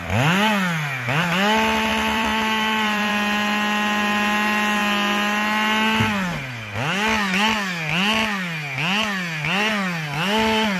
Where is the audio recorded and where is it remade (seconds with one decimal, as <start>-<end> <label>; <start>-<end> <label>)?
0.0-1.9 recorded; 1.9-3.1 remade; 3.1-10.8 recorded